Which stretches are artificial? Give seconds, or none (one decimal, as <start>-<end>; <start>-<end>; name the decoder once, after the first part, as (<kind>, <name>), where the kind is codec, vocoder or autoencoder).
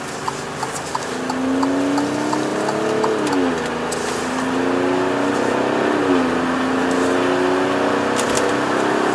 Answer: none